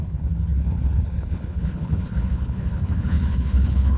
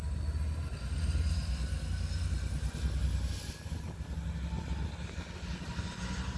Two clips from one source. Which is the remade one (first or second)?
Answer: first